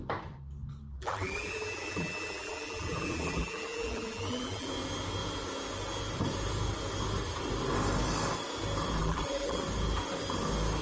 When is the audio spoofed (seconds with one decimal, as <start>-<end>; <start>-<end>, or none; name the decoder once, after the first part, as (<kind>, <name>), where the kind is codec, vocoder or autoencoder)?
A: 0.9-4.7 (vocoder, BigVGAN v2); 9.0-9.6